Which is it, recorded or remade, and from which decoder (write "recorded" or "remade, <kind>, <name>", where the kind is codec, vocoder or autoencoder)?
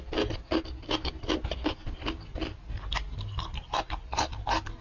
recorded